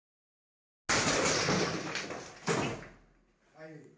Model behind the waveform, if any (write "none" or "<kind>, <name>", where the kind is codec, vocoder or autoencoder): none